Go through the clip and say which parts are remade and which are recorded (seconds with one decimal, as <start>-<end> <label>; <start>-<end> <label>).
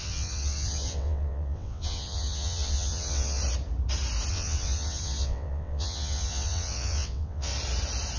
0.0-3.4 remade; 3.4-4.3 recorded; 4.3-7.5 remade; 7.5-8.2 recorded